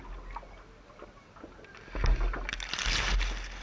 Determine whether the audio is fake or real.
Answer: real